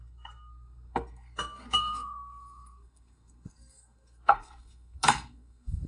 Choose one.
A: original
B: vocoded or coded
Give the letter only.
B